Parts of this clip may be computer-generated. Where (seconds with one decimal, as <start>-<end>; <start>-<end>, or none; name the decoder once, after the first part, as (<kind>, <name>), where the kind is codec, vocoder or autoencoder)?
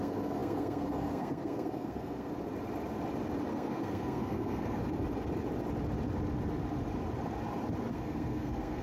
0.0-2.3 (codec, SNAC); 3.5-4.8; 7.9-8.8